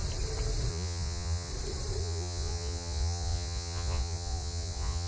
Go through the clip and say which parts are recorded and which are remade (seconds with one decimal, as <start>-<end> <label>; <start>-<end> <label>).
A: 0.0-0.7 recorded; 0.7-1.5 remade; 1.5-2.0 recorded; 2.0-5.1 remade

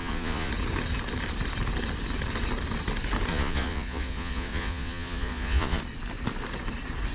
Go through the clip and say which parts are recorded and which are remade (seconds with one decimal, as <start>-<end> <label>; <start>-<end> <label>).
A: 0.0-0.5 remade; 0.5-3.3 recorded; 3.3-5.8 remade; 5.8-7.1 recorded